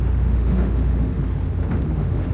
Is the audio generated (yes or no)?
yes